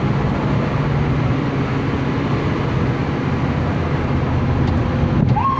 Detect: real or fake real